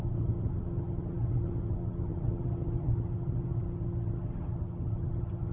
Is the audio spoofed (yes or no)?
yes